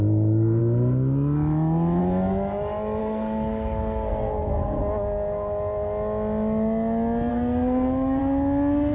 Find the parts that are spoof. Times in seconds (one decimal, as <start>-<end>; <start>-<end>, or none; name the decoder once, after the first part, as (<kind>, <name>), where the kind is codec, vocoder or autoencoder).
3.0-4.8 (codec, SNAC); 7.3-8.2